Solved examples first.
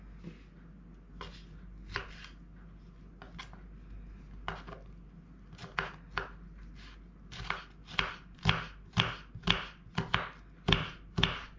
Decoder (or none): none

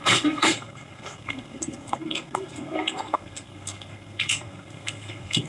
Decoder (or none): codec, SNAC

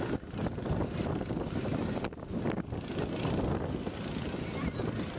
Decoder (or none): none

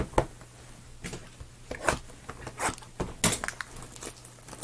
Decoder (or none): none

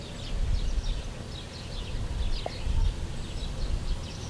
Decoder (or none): none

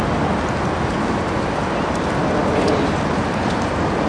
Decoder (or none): none